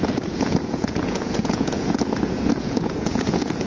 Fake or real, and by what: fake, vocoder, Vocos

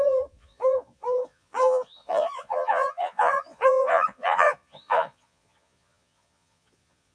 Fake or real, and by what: fake, vocoder, Vocos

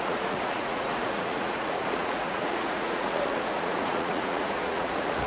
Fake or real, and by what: fake, vocoder, Vocos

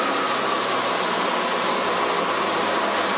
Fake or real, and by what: real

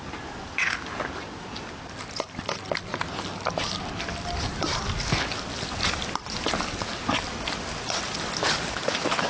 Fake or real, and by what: real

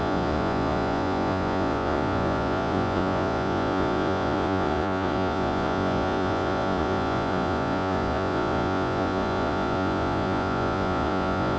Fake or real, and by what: fake, vocoder, Vocos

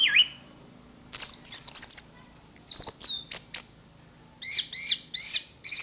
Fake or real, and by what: real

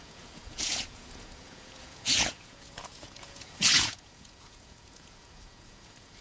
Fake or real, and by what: fake, vocoder, Vocos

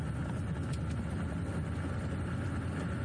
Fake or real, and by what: real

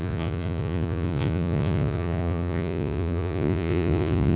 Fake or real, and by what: fake, vocoder, Vocos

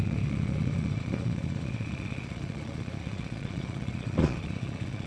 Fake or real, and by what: fake, vocoder, Vocos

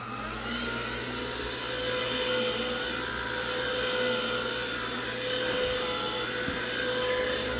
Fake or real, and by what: real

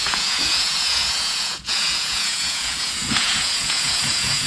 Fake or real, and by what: fake, vocoder, Vocos